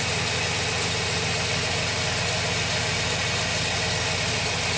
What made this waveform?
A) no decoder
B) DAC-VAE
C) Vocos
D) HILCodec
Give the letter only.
A